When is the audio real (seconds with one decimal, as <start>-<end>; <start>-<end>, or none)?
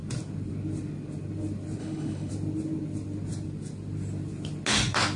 0.0-1.8; 2.3-5.2